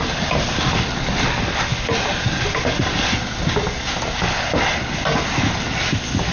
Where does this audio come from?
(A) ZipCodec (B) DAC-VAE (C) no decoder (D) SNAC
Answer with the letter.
C